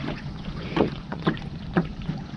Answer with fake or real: fake